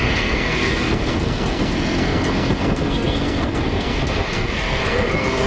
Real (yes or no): no